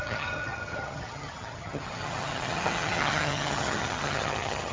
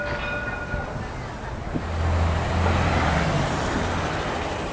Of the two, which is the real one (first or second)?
second